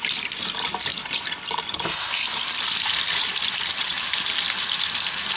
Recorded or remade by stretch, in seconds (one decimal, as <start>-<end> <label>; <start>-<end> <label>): 0.0-0.9 recorded; 0.9-4.0 remade; 4.0-5.4 recorded